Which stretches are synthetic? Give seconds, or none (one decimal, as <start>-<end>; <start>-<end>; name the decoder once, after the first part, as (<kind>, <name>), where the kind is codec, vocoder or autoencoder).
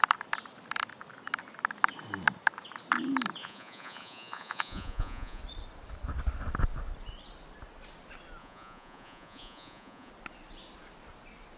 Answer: 3.4-5.4 (vocoder, Vocos); 8.4-10.1